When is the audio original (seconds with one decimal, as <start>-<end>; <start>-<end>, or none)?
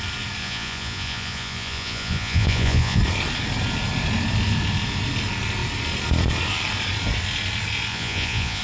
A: 0.0-0.4; 3.0-7.9